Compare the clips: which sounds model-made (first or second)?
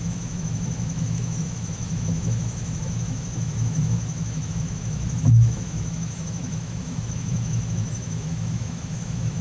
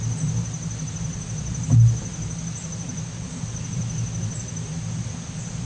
first